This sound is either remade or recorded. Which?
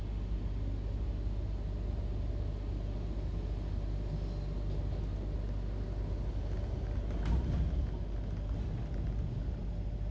recorded